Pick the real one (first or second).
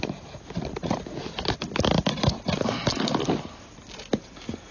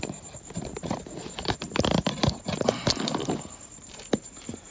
first